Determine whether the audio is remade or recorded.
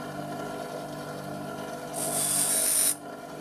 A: recorded